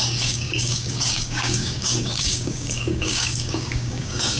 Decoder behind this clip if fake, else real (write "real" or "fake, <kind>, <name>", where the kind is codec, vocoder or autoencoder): fake, codec, DAC